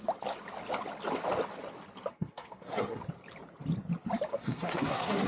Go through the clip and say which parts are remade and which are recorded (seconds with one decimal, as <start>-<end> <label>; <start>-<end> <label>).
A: 0.0-2.1 recorded; 2.1-3.0 remade; 3.0-4.3 recorded; 4.3-5.3 remade